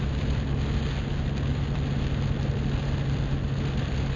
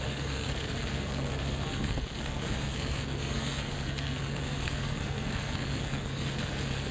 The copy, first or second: second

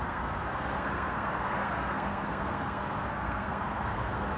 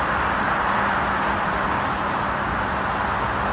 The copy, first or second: first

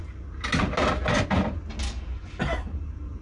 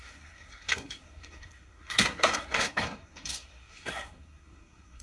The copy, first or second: second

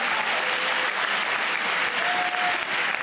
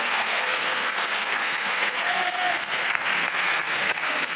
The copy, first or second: second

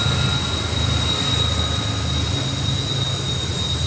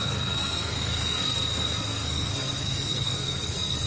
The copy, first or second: second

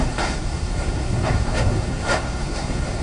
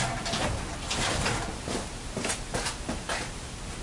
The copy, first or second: first